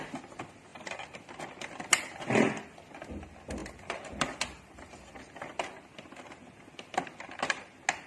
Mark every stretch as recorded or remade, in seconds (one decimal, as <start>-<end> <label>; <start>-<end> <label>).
0.0-0.7 recorded; 0.7-1.6 remade; 1.6-3.6 recorded; 3.6-5.2 remade; 5.2-8.1 recorded